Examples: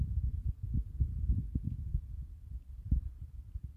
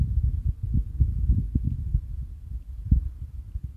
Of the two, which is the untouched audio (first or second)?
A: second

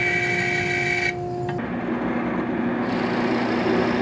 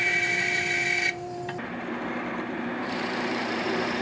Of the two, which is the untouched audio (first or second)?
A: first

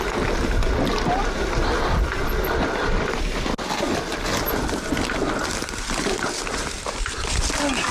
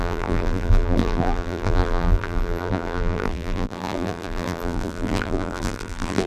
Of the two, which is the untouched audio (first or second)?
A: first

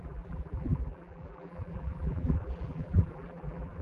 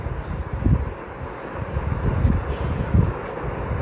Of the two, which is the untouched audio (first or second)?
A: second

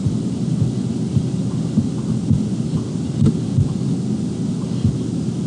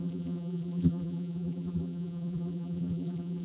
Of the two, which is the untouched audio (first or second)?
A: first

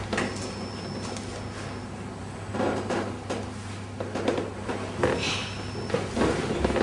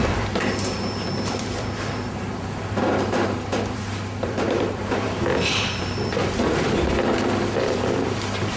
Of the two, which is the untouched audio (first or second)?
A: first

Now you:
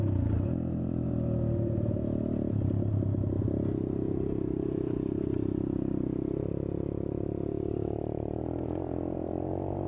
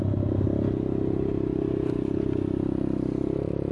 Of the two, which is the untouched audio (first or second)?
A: second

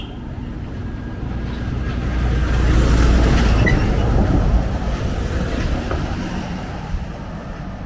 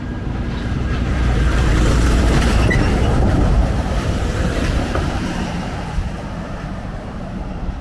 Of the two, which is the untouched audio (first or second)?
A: first